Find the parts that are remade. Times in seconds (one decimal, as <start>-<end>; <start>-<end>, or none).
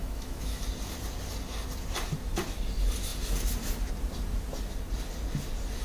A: 0.0-0.6